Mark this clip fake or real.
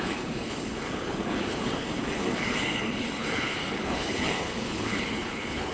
fake